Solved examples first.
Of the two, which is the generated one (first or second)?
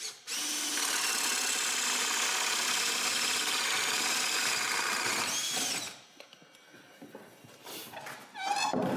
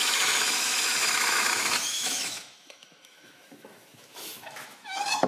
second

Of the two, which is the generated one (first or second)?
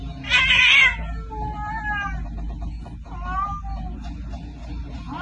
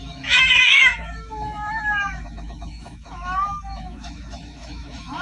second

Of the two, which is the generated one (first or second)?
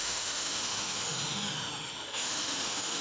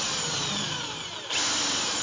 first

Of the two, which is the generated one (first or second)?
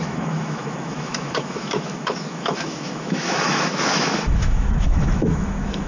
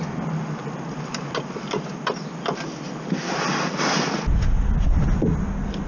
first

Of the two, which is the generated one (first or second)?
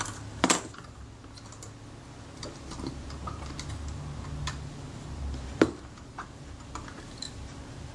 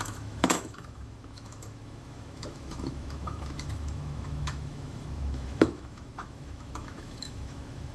second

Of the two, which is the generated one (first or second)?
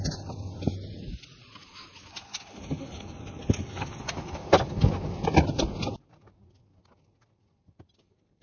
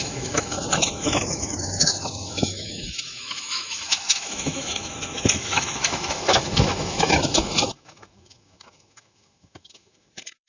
second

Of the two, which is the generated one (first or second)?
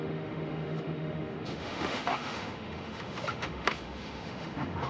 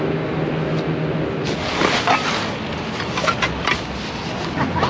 first